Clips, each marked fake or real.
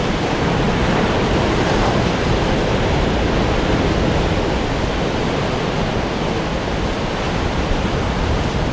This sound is real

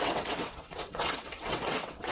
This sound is fake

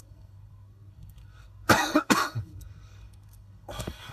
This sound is fake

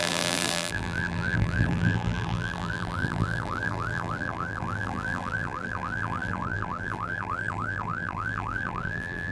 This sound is fake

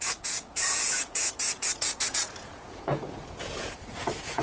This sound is fake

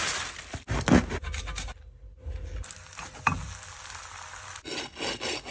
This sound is real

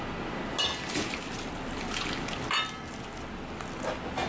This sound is real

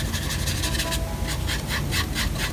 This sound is real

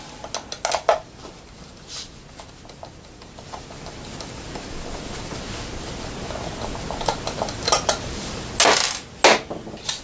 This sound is real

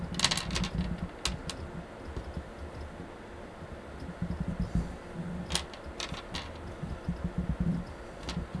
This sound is real